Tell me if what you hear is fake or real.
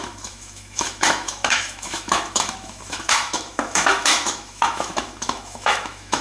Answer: fake